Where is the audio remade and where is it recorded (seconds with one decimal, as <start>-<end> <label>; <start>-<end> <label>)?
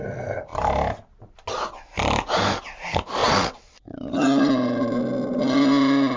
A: 0.0-3.2 recorded; 3.2-4.4 remade; 4.4-6.2 recorded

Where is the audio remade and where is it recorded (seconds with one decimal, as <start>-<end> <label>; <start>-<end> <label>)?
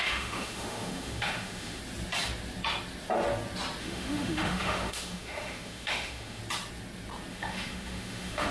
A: 0.0-1.8 remade; 1.8-3.8 recorded; 3.8-6.4 remade; 6.4-7.3 recorded; 7.3-8.5 remade